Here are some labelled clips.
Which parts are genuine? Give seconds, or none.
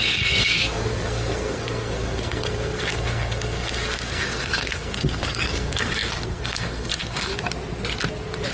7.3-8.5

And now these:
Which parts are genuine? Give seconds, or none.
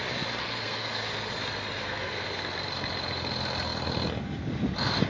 0.0-0.4; 1.3-1.8; 2.4-5.1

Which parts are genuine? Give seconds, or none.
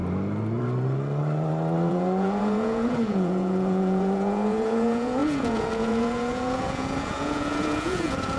0.0-1.9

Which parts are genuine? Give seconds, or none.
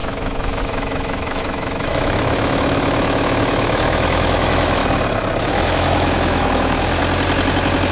4.8-5.4; 7.0-7.9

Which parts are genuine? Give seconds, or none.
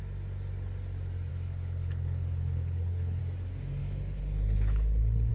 0.0-1.3; 3.2-3.8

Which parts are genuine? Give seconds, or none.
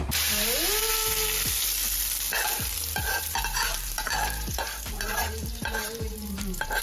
0.8-3.1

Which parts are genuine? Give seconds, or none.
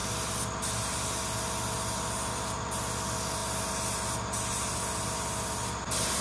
0.0-6.2